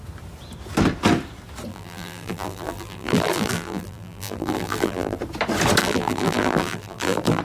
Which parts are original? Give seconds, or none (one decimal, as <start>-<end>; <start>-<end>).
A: 0.0-1.7; 5.2-5.8

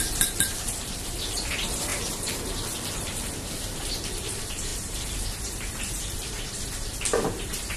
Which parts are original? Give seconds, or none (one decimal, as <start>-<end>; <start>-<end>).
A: none

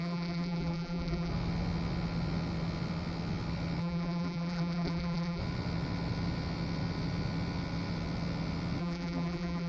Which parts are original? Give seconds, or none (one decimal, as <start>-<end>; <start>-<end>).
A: 1.3-3.8; 5.4-8.8

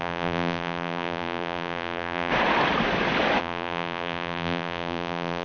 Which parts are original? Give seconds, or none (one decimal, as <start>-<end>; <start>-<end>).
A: 2.3-3.4

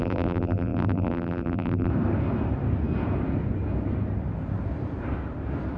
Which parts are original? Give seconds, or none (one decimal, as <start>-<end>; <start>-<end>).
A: 1.9-5.8

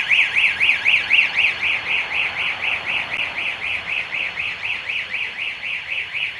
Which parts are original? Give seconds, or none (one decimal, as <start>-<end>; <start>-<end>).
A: 0.0-3.5

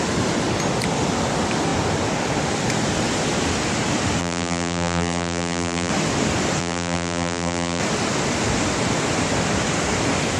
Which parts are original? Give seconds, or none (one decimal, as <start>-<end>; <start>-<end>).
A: 0.0-4.2; 5.9-6.6; 7.8-10.4

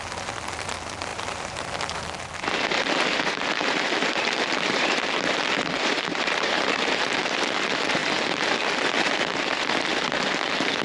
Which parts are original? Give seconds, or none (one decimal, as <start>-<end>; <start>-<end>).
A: 0.0-1.1; 1.7-3.6; 7.0-10.8